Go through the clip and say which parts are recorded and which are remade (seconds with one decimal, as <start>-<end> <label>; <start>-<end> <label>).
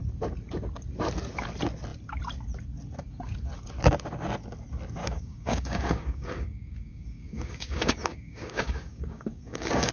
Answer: 0.0-5.0 recorded; 5.0-9.9 remade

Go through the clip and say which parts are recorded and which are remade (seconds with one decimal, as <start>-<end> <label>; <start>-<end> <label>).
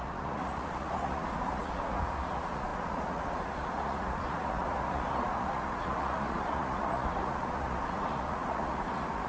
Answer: 0.0-9.3 remade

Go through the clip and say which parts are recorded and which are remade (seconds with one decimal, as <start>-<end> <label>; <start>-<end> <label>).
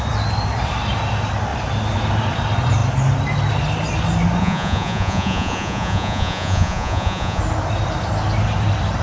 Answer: 0.0-4.4 recorded; 4.4-7.4 remade; 7.4-9.0 recorded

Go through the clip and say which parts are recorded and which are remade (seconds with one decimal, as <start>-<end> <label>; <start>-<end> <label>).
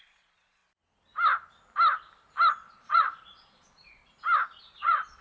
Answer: 0.0-0.6 remade; 0.6-2.5 recorded; 2.5-4.0 remade; 4.0-4.6 recorded; 4.6-5.2 remade